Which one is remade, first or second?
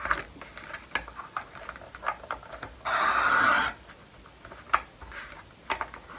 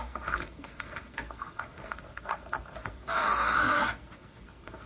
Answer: second